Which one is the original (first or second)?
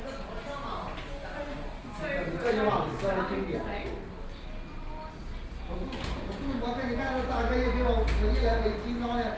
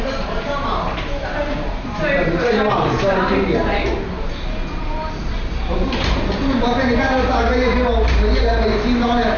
first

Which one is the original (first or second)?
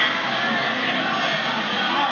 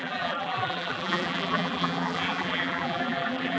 first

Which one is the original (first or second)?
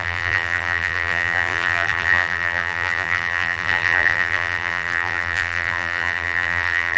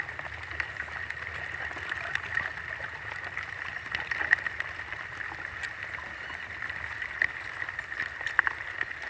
second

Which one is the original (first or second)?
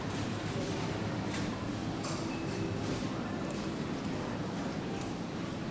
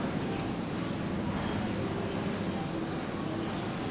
second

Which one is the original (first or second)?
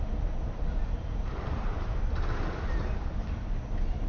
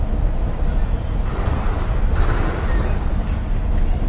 second